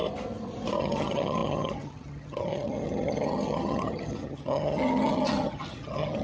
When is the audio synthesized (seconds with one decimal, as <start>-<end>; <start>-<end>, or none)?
0.8-6.2